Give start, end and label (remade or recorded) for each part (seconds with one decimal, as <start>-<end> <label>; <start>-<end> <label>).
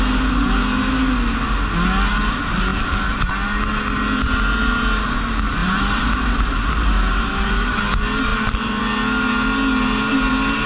0.0-5.6 recorded; 5.6-7.8 remade; 7.8-8.3 recorded; 8.3-8.8 remade; 8.8-10.7 recorded